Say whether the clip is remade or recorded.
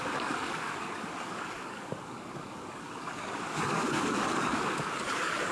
remade